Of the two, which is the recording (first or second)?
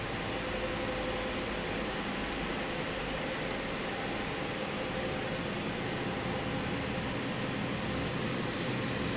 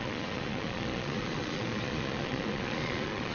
first